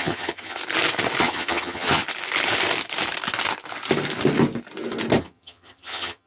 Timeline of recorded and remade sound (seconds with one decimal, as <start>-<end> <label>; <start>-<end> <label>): 0.0-0.6 remade; 0.6-1.2 recorded; 1.2-2.0 remade; 2.0-5.2 recorded; 5.2-6.3 remade